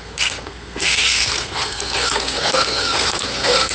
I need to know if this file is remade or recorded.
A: remade